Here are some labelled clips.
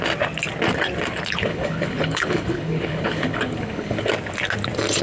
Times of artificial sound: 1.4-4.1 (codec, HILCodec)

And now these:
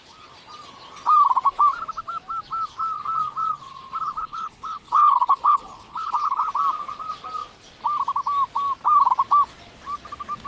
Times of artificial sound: 4.2-6.5 (codec, HILCodec)

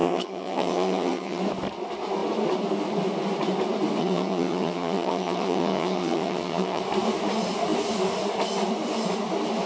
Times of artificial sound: 0.0-1.4 (vocoder, HiFi-GAN); 4.0-6.8

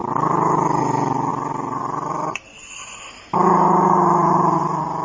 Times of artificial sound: none

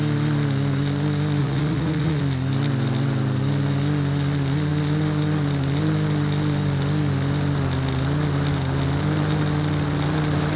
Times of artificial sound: 1.4-2.2 (vocoder, Vocos)

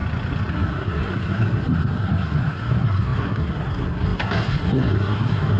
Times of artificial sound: 0.5-5.6 (codec, SNAC)